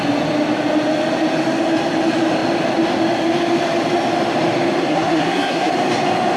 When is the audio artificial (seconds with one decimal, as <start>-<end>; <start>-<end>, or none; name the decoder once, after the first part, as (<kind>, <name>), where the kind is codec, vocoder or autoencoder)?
4.8-5.7 (codec, SNAC)